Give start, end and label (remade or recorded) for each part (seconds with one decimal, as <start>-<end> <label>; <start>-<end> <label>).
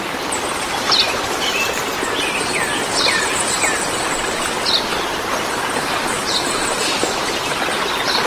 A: 0.0-8.3 recorded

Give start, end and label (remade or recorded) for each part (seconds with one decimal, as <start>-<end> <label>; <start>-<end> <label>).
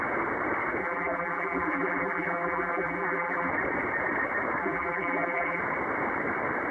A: 0.0-0.8 recorded; 0.8-3.5 remade; 3.5-4.6 recorded; 4.6-5.6 remade; 5.6-6.7 recorded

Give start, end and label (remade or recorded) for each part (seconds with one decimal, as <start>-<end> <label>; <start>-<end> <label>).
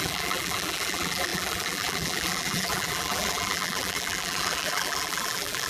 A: 0.0-5.7 remade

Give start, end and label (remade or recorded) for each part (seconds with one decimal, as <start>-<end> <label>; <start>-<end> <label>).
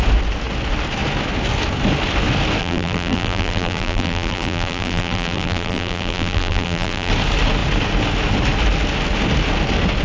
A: 0.0-2.6 recorded; 2.6-7.1 remade; 7.1-10.0 recorded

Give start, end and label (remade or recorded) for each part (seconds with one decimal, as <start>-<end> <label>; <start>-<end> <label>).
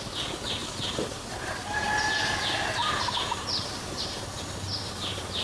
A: 0.0-0.6 recorded; 0.6-2.1 remade; 2.1-5.4 recorded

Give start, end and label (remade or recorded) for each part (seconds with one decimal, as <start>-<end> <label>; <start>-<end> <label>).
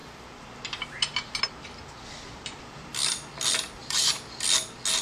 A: 0.0-3.8 recorded; 3.8-4.4 remade; 4.4-5.0 recorded